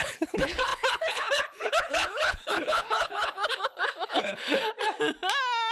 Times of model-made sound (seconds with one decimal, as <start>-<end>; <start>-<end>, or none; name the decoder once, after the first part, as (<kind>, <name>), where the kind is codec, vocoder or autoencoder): 0.0-4.6 (codec, HILCodec)

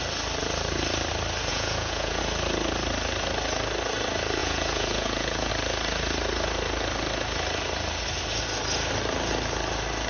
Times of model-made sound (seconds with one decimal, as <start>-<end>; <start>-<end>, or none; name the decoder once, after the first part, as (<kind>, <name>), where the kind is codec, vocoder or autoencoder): 1.5-2.2 (vocoder, Vocos); 4.4-5.5

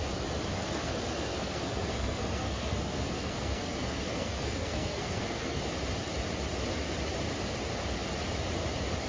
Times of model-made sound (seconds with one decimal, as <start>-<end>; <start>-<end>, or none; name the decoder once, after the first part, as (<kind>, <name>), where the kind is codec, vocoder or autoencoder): 0.5-5.6 (codec, SNAC)

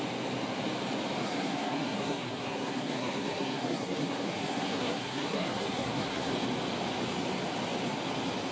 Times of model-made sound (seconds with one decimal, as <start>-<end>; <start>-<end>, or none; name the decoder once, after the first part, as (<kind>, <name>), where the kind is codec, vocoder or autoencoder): 1.2-6.3 (codec, SNAC)

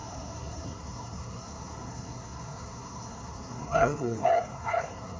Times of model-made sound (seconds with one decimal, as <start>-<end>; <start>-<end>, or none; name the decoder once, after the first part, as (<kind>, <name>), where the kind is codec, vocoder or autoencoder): 0.0-5.2 (codec, SNAC)

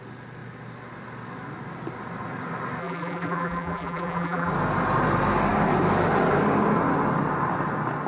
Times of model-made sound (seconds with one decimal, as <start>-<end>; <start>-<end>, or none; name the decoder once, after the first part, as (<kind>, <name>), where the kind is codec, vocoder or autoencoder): 2.8-4.5 (vocoder, BigVGAN v2)